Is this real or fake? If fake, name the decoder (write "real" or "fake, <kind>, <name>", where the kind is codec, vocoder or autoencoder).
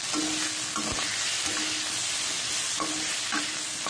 real